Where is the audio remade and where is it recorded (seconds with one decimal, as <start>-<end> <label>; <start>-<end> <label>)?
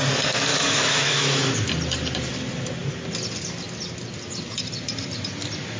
0.0-0.5 recorded; 0.5-1.5 remade; 1.5-5.8 recorded